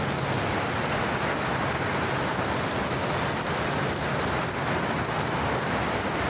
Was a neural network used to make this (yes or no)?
no